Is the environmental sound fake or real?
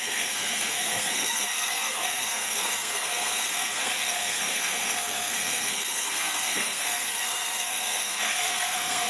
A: fake